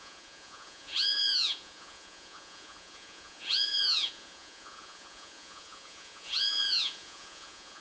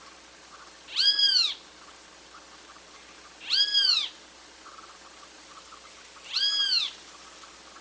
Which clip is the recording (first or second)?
second